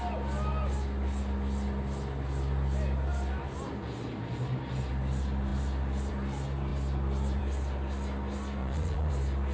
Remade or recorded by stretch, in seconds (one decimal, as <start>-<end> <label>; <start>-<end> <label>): 0.0-8.6 recorded; 8.6-9.1 remade; 9.1-9.5 recorded